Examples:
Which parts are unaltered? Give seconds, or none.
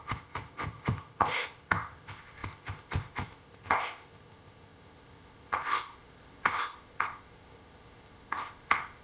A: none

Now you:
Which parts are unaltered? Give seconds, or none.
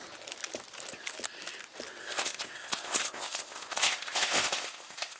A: 0.0-2.0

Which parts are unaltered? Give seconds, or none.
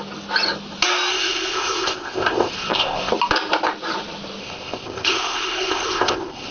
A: 0.0-1.1; 3.1-4.4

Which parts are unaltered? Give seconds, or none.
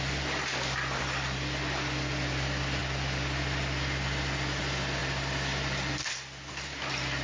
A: 0.0-7.2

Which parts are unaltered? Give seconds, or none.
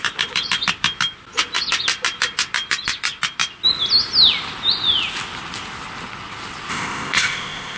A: 0.0-6.7